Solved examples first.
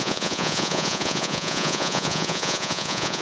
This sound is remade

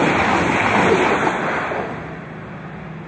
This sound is recorded